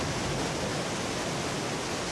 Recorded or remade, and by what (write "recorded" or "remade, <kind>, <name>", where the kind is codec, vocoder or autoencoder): recorded